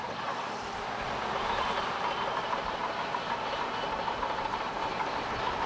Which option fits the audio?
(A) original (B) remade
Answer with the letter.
A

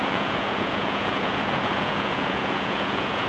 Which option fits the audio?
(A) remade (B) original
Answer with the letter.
A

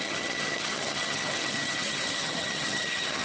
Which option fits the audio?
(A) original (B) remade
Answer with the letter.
B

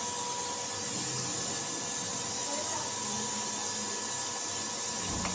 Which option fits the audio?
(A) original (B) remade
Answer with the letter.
A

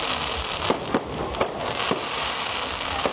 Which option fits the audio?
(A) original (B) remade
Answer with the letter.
A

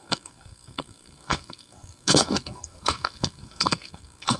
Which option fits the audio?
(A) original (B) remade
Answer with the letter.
B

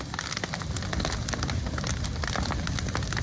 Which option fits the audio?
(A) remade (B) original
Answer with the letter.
B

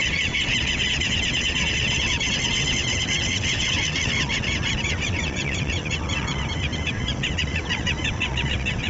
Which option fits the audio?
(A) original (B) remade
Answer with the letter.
B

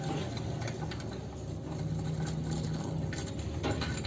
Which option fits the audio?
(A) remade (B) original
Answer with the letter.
A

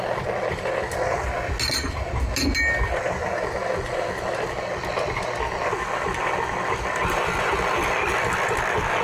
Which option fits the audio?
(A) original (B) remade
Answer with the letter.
A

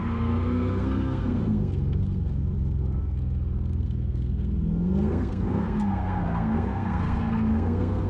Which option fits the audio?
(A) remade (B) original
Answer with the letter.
A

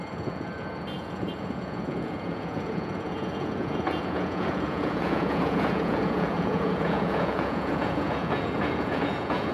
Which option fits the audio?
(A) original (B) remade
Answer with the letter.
B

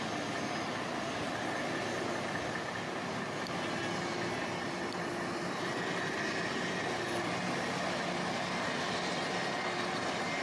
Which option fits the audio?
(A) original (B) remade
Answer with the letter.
A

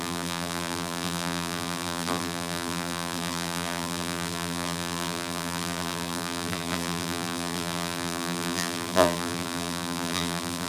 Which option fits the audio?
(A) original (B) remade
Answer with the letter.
B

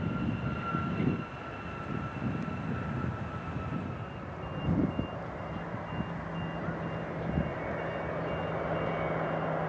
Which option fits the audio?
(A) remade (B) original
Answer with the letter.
B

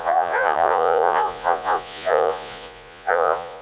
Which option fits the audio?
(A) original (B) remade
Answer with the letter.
B